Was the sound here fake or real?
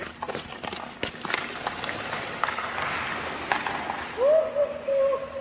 real